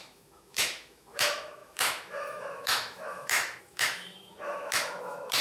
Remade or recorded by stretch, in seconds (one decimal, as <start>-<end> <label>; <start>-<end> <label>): 0.0-5.4 remade